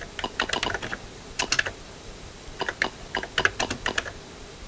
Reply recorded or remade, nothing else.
recorded